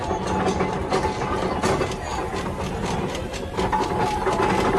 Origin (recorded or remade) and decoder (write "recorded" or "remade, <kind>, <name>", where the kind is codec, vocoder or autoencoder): recorded